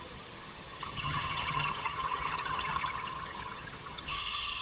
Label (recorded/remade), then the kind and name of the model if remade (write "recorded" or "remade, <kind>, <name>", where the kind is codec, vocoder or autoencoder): remade, vocoder, HiFi-GAN